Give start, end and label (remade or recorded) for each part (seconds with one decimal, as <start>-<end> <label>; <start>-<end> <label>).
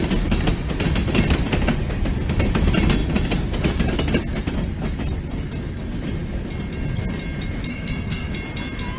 0.0-7.7 recorded; 7.7-8.3 remade; 8.3-9.0 recorded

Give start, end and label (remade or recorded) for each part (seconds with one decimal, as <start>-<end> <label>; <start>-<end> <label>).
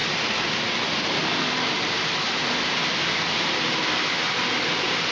0.0-5.1 recorded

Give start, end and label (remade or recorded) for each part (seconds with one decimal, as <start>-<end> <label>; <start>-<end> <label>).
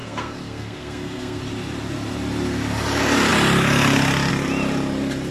0.0-1.4 remade; 1.4-5.3 recorded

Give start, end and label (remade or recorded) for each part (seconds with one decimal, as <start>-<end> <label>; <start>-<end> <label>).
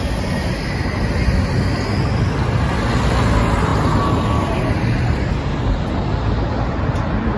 0.0-7.4 recorded